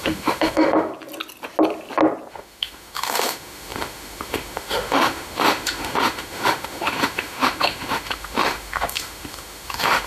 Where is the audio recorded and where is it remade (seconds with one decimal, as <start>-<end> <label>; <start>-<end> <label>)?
0.0-0.9 remade; 0.9-2.3 recorded; 2.3-10.1 remade

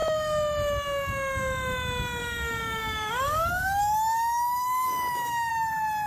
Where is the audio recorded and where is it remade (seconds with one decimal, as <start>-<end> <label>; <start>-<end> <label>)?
0.0-2.2 recorded; 2.2-5.5 remade; 5.5-6.1 recorded

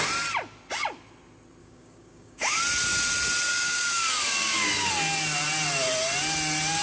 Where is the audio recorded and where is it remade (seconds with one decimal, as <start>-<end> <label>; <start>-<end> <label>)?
0.0-1.6 recorded; 1.6-2.6 remade; 2.6-3.5 recorded; 3.5-4.9 remade; 4.9-6.8 recorded